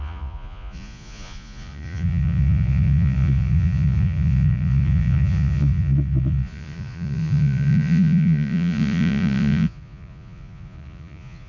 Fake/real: fake